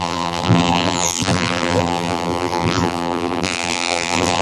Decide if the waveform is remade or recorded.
remade